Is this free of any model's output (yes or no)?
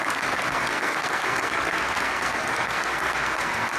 no